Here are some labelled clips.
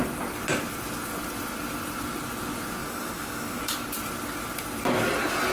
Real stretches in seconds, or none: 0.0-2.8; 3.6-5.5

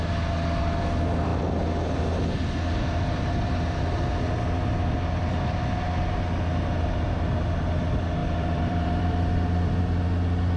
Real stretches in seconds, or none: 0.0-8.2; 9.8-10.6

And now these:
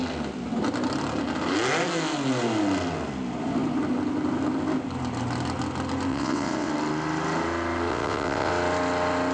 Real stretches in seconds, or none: 0.0-6.1; 6.7-7.9; 8.5-9.3

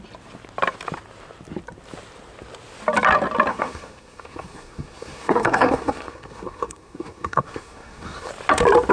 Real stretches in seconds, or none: 0.0-3.5; 8.3-8.9